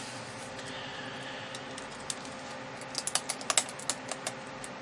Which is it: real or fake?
real